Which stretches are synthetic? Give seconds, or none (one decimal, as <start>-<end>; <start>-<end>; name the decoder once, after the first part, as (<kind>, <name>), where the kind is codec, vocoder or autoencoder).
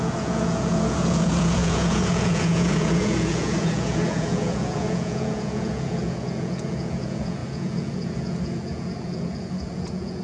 0.0-10.2 (vocoder, Vocos)